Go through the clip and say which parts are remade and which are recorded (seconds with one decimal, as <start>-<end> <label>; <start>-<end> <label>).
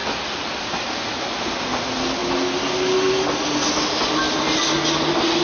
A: 0.0-5.4 recorded